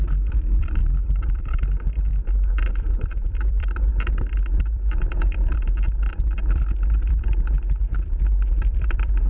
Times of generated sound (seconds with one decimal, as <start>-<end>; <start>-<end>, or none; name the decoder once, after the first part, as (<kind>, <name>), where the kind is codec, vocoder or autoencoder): 0.0-2.1 (vocoder, BigVGAN v2); 2.7-3.9; 4.5-9.3